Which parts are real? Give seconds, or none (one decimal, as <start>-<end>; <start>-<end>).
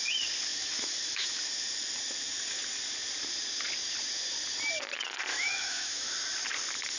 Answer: 0.0-0.5; 1.4-5.3; 6.1-7.0